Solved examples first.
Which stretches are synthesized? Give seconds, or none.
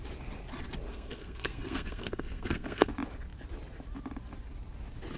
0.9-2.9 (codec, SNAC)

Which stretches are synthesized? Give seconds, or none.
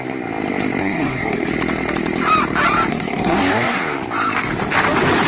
0.8-1.5 (codec, SNAC); 2.9-3.8